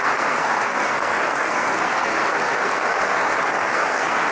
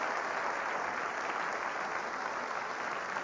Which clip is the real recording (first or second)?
second